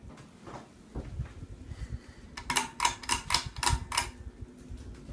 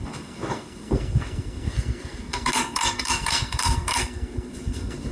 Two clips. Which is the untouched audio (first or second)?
first